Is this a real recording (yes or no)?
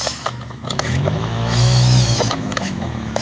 no